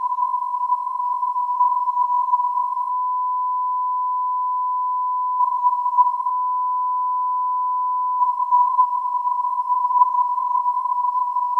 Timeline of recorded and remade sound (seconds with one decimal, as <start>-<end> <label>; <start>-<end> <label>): 0.0-2.9 remade; 2.9-5.4 recorded; 5.4-6.3 remade; 6.3-8.2 recorded; 8.2-11.6 remade